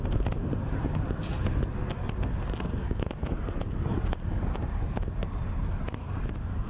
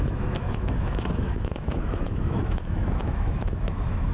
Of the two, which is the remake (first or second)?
second